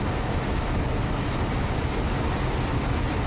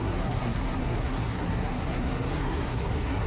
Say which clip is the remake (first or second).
second